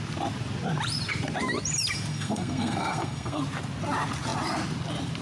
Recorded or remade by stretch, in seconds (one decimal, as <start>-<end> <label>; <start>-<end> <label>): 0.0-2.1 recorded; 2.1-3.4 remade; 3.4-5.2 recorded

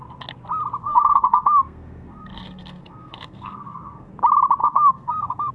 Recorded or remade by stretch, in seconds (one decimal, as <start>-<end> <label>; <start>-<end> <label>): 0.0-0.8 recorded; 0.8-4.1 remade; 4.1-4.6 recorded; 4.6-5.5 remade